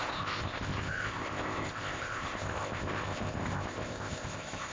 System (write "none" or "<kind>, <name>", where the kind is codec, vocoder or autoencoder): codec, ZipCodec